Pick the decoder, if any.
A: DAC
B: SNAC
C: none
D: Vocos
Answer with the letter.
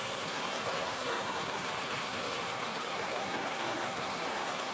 B